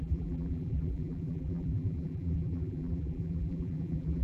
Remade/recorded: remade